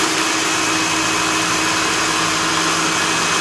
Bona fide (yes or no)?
yes